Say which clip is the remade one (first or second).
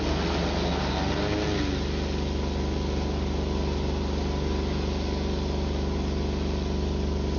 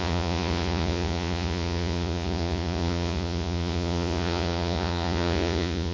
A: second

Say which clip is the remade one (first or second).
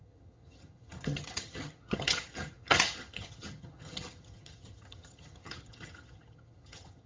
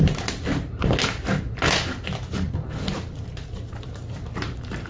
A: first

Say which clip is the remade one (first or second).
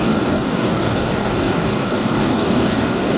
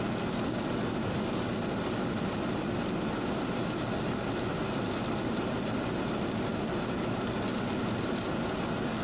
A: first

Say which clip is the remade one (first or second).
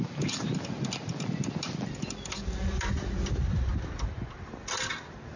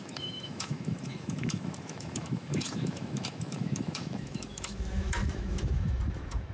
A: second